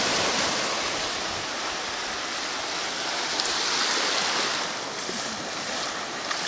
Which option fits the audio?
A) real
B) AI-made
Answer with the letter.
A